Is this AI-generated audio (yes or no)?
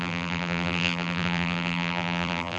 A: yes